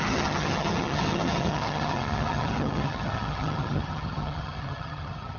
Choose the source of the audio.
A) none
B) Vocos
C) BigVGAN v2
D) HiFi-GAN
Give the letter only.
D